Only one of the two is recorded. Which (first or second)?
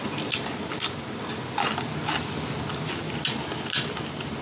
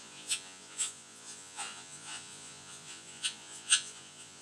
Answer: first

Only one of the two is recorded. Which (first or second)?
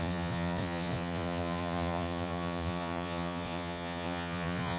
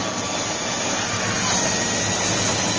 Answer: second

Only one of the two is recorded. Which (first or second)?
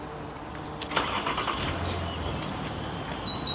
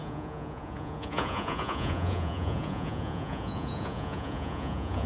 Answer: first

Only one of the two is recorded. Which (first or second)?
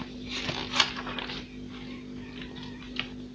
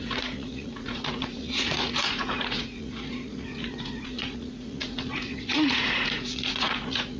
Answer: first